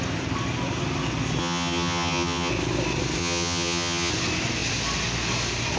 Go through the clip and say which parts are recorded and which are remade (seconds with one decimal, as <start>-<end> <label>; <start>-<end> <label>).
0.0-1.4 recorded; 1.4-2.5 remade; 2.5-3.2 recorded; 3.2-4.1 remade; 4.1-5.8 recorded